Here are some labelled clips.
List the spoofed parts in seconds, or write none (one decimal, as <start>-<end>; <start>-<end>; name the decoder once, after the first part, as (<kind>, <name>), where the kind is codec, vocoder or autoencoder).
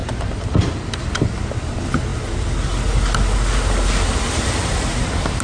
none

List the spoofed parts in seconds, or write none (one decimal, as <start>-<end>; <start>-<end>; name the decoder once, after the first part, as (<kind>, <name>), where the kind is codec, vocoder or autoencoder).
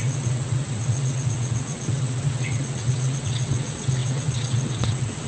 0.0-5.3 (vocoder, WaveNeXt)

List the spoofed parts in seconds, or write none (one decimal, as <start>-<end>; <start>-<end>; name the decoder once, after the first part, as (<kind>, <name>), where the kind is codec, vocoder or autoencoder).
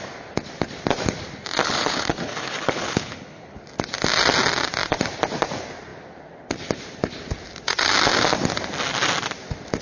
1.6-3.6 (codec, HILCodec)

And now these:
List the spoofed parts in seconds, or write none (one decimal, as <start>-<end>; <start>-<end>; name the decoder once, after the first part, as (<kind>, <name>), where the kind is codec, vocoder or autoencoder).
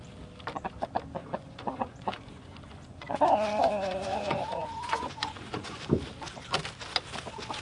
1.2-5.8 (vocoder, Vocos)